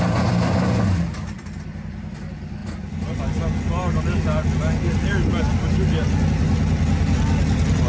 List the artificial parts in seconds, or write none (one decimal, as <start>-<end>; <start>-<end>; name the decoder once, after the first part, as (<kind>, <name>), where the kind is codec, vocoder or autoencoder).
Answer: 2.6-3.2 (vocoder, BigVGAN v2)